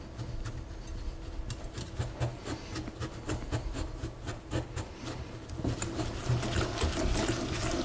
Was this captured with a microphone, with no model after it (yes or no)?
yes